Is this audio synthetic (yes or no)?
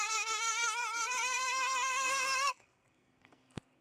yes